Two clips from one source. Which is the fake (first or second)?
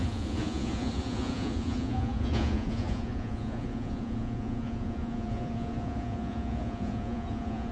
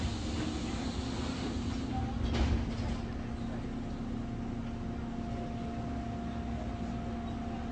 first